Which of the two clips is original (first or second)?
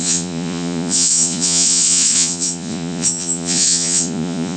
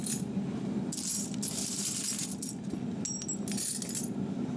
second